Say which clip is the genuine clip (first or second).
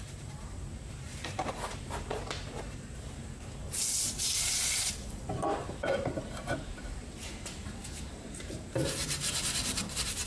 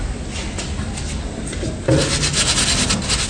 second